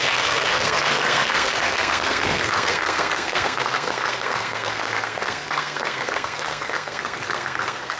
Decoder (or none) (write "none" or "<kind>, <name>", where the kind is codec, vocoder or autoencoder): codec, SNAC